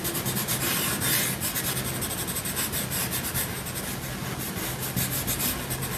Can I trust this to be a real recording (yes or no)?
yes